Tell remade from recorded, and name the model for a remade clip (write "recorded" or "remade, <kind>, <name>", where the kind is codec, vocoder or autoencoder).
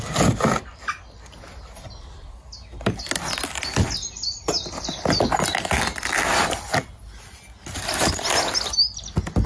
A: recorded